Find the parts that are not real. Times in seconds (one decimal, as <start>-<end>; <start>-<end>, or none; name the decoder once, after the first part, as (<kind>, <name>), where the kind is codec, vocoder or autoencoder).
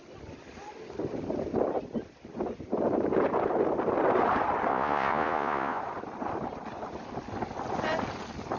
4.7-5.8 (vocoder, Vocos)